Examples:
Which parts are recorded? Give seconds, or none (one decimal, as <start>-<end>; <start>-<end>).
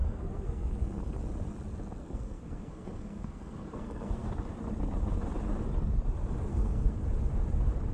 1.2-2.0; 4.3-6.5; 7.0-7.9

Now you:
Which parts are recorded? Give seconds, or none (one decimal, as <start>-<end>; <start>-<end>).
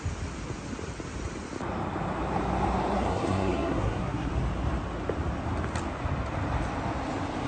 0.0-2.9; 4.3-7.5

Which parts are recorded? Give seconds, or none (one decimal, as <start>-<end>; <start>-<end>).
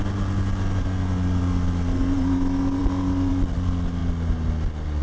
0.0-5.0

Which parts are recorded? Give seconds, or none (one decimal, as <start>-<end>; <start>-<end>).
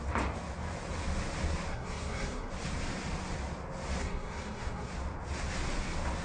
0.0-1.7; 2.5-4.0; 4.9-6.2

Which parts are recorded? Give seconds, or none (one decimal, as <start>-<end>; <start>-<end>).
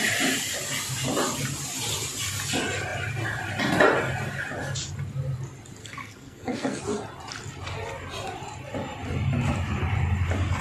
0.0-5.8; 6.8-10.6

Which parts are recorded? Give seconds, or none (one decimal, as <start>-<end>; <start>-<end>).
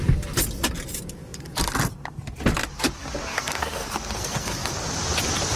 0.0-3.3; 4.9-5.6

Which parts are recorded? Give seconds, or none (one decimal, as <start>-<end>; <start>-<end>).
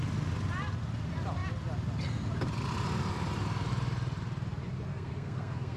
0.0-4.9